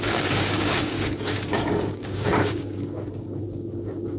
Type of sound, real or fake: fake